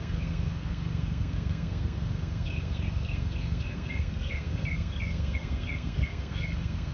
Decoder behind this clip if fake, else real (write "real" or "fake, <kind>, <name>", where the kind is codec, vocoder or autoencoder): fake, codec, SNAC